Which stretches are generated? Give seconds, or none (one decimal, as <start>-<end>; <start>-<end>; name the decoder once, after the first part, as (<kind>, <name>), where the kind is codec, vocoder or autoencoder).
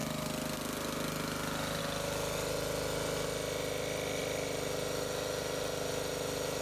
none